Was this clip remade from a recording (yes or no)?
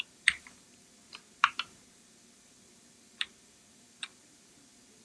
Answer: yes